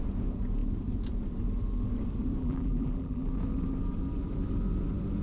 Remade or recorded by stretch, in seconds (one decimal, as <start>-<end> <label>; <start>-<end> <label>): 0.0-2.4 recorded; 2.4-3.3 remade; 3.3-5.2 recorded